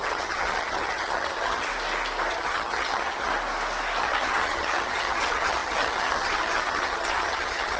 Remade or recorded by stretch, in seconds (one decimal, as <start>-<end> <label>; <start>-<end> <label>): 0.0-1.7 remade; 1.7-2.3 recorded; 2.3-3.3 remade; 3.3-4.0 recorded; 4.0-7.8 remade